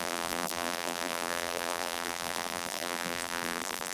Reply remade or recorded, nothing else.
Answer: remade